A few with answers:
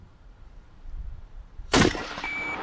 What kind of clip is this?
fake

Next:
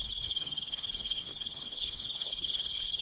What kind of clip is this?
fake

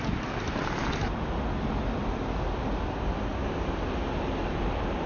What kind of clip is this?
real